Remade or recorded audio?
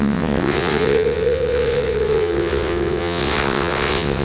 remade